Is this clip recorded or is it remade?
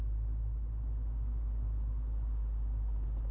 recorded